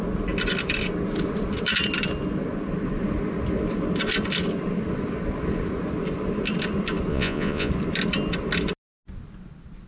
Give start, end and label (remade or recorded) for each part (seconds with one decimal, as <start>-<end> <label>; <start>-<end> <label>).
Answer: 0.0-7.1 recorded; 7.1-7.7 remade; 7.7-9.9 recorded